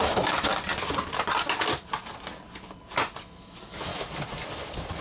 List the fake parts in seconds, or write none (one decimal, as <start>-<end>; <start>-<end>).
0.0-0.5; 3.2-3.9

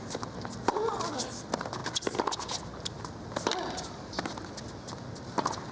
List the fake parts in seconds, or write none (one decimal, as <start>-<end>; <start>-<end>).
none